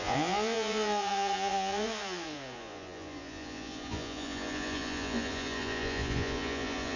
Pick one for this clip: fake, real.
fake